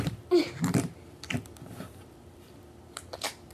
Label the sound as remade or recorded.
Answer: remade